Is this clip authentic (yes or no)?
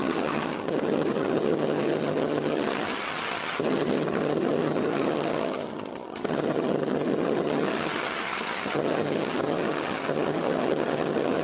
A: no